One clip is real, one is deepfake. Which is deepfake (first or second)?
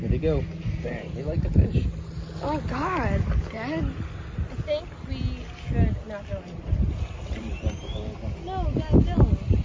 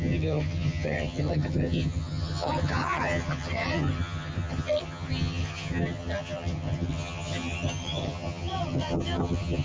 second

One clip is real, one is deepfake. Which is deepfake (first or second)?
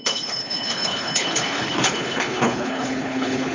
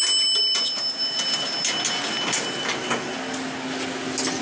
first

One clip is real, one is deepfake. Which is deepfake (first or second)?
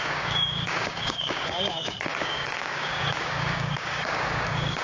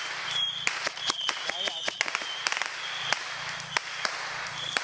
first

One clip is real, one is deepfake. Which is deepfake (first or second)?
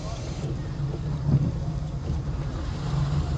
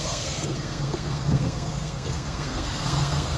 second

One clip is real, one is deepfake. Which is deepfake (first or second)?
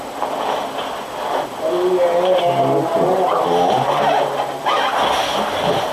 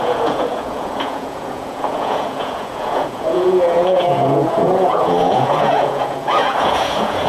second